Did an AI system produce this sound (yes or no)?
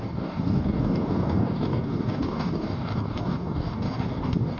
yes